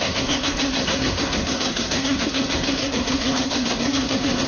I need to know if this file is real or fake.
fake